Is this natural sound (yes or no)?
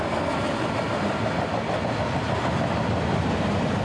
yes